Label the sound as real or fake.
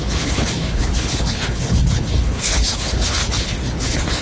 fake